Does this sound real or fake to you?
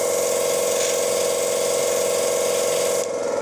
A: real